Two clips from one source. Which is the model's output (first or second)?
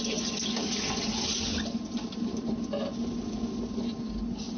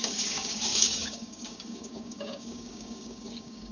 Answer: second